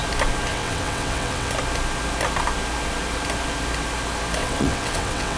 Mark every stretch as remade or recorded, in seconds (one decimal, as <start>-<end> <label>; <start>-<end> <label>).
0.0-0.5 recorded; 0.5-1.5 remade; 1.5-4.4 recorded; 4.4-5.4 remade